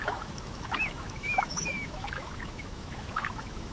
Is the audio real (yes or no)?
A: no